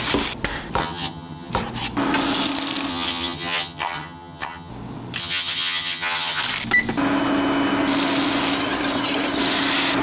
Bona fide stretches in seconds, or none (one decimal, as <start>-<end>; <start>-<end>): 0.0-0.8; 1.5-2.9; 4.7-5.2; 6.4-10.0